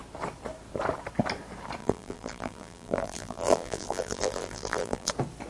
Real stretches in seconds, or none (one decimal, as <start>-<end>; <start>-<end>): 0.0-1.8; 5.1-5.5